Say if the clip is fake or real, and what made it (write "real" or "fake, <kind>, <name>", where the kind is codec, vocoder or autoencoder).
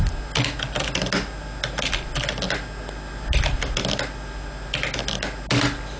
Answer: real